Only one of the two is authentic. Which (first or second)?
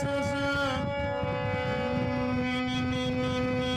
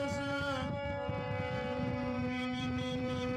first